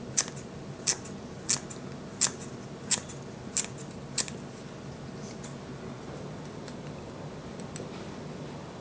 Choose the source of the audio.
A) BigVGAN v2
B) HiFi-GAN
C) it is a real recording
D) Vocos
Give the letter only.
C